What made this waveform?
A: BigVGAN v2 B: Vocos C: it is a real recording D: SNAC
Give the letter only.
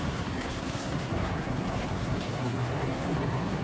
D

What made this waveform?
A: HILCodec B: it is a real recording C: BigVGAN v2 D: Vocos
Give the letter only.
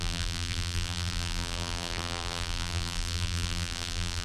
C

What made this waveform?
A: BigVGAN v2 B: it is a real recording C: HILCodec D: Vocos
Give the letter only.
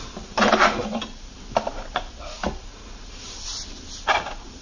B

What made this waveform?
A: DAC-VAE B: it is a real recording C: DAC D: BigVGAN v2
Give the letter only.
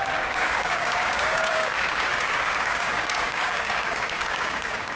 C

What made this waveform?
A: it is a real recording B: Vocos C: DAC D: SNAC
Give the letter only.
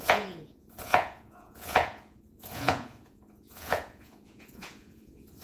B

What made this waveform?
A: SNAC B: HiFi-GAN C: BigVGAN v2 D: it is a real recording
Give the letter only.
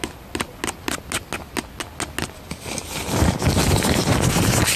D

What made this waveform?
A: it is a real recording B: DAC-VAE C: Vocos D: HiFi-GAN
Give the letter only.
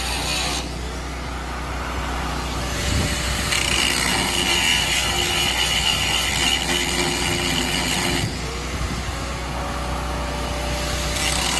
A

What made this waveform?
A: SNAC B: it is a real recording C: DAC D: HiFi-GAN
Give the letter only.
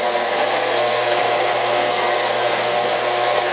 A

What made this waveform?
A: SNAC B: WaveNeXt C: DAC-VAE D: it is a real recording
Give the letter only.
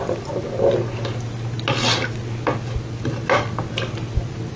D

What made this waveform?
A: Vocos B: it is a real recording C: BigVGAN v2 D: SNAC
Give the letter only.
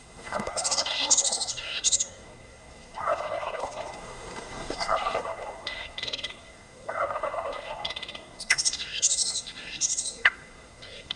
D